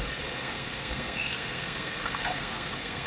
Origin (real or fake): fake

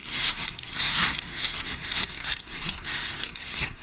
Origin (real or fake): fake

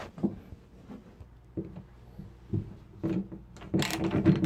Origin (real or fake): real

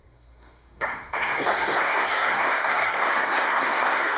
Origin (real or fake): fake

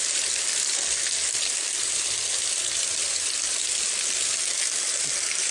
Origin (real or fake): real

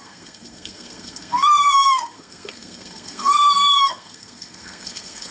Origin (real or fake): fake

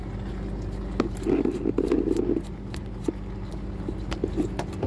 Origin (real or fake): real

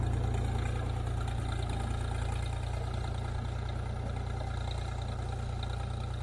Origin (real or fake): real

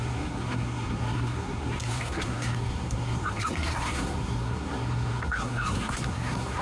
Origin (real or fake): fake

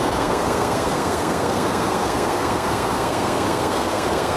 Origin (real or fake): fake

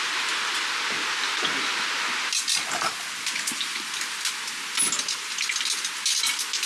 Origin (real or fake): real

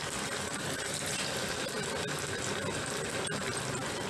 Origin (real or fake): real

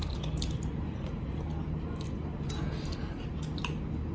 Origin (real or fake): real